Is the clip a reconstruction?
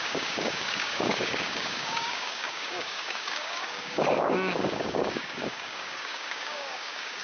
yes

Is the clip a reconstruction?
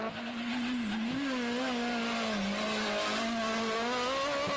no